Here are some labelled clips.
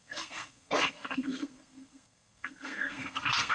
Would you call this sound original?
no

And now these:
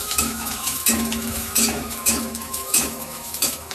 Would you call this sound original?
no